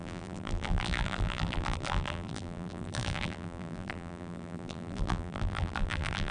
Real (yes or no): no